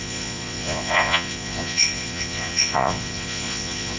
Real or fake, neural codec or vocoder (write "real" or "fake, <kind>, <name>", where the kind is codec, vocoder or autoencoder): fake, vocoder, Vocos